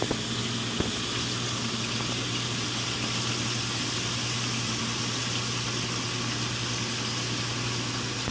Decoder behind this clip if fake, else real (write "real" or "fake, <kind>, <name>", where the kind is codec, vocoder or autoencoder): real